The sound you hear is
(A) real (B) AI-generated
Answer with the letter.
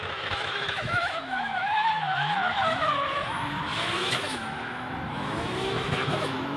B